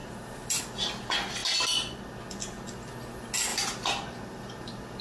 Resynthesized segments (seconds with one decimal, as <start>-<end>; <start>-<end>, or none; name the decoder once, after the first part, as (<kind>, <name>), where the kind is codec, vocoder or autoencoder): 0.0-0.6 (vocoder, BigVGAN v2); 3.5-5.0